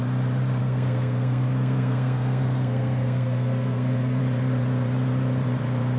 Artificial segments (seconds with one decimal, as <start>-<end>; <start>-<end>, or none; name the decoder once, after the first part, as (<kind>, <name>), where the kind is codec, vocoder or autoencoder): 0.6-4.2 (codec, SNAC)